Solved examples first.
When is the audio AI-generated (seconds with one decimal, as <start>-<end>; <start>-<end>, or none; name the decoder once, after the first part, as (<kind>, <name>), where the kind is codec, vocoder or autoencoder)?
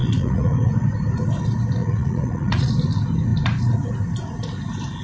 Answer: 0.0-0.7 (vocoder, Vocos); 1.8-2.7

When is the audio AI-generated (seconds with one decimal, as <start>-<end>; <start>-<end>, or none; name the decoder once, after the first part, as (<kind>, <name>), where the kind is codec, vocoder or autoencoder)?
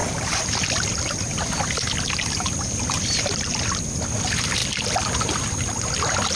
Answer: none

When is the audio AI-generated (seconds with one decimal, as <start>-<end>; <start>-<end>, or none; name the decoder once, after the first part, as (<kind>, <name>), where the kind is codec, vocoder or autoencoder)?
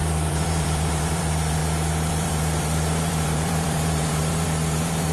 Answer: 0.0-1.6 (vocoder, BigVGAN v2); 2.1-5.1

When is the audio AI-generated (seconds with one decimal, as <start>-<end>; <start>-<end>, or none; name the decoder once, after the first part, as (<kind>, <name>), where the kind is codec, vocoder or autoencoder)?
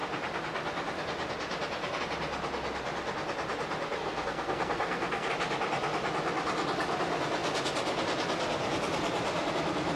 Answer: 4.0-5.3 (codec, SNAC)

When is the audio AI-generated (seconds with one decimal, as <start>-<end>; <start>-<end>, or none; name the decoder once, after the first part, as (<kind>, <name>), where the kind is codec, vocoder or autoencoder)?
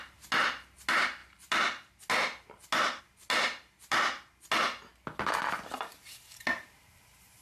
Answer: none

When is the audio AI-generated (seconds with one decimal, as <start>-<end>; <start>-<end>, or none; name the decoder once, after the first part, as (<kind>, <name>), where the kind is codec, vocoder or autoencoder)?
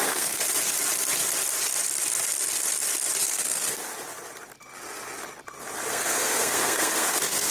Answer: 0.0-0.4 (codec, SNAC); 3.2-3.9; 5.9-7.5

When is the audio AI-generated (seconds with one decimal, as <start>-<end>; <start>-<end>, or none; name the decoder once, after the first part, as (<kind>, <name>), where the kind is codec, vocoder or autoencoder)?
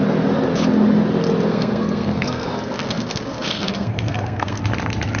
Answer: 1.5-4.6 (codec, SNAC)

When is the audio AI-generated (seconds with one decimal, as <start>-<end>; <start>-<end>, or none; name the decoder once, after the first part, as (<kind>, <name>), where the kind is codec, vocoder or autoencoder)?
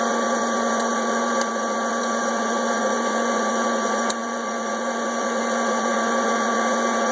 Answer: 0.0-7.1 (vocoder, Vocos)